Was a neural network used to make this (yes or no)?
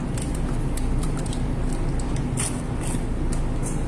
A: no